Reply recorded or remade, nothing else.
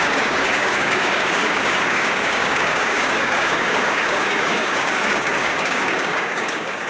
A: remade